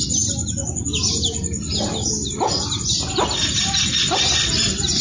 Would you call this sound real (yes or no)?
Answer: yes